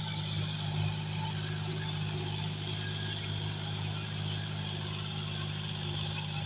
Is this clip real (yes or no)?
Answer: yes